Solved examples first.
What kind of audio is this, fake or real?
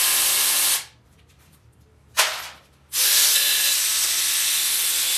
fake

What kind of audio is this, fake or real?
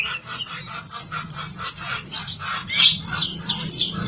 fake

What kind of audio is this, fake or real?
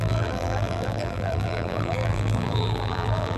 fake